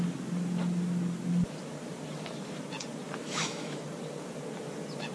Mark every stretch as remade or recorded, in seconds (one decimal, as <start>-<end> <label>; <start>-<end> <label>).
0.0-3.2 recorded; 3.2-3.8 remade; 3.8-5.1 recorded